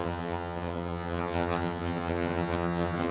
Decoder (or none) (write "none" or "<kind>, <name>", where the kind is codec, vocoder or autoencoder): vocoder, HiFi-GAN